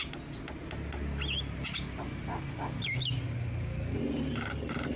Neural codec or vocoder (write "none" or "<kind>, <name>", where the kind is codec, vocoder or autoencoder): none